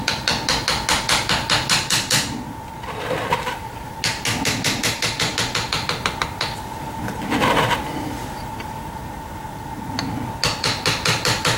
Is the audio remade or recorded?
recorded